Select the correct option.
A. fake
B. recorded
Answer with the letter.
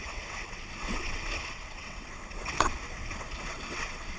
A